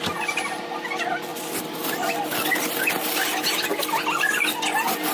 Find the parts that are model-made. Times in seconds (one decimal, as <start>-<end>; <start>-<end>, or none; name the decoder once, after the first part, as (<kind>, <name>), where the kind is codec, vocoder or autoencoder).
none